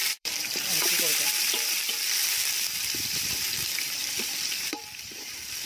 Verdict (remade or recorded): remade